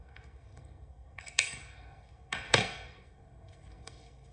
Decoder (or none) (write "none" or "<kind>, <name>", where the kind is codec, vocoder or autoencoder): codec, SNAC